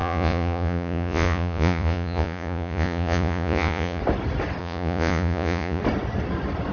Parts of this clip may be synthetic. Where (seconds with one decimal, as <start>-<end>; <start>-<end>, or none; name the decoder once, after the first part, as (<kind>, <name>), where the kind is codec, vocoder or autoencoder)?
0.0-4.0 (vocoder, Vocos); 4.6-5.8